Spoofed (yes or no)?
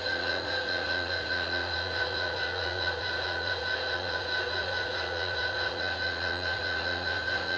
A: yes